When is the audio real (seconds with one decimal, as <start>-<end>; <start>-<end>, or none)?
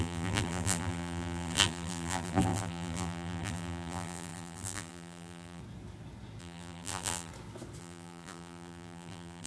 5.6-6.4; 7.3-7.8